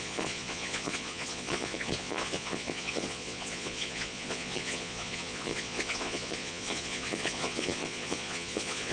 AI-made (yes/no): yes